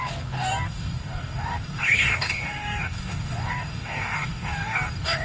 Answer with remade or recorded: remade